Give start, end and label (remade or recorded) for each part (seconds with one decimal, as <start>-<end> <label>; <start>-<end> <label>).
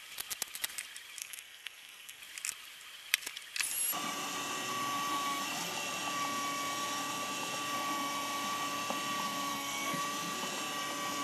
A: 0.0-1.2 recorded; 1.2-2.2 remade; 2.2-9.5 recorded; 9.5-10.0 remade; 10.0-11.2 recorded